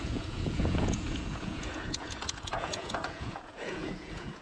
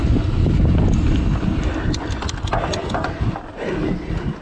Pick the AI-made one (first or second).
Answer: first